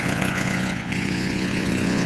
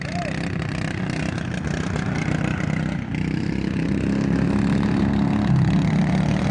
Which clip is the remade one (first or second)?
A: first